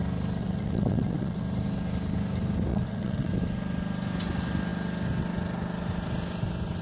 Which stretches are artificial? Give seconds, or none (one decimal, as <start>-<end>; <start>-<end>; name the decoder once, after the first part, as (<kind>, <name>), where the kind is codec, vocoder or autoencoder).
0.4-1.4 (vocoder, WaveNeXt); 2.7-3.3